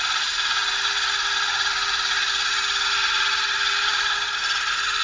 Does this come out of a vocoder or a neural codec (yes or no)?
no